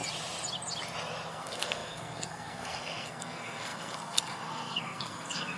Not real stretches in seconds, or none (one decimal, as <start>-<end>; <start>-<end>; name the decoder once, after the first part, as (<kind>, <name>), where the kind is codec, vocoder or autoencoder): 1.3-5.6 (codec, SNAC)